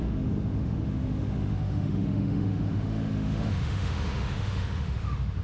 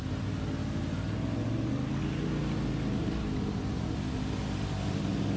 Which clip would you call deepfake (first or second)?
first